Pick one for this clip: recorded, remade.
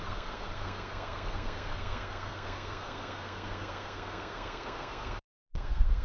remade